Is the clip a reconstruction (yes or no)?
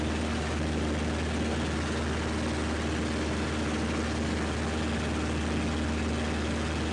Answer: no